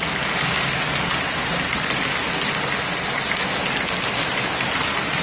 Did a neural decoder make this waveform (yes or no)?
no